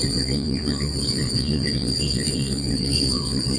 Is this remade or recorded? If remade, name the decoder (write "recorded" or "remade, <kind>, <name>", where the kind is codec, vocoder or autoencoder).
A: remade, vocoder, WaveNeXt